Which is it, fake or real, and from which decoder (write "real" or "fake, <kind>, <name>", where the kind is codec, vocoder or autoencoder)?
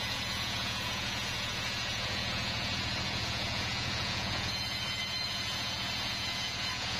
fake, vocoder, Vocos